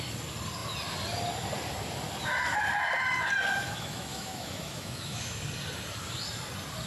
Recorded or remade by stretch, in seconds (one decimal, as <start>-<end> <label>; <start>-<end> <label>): 0.0-3.6 recorded; 3.6-5.4 remade; 5.4-6.9 recorded